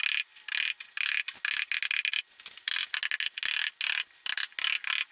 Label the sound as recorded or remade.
recorded